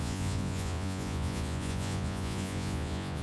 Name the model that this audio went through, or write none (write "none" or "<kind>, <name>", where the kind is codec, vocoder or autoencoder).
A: vocoder, Vocos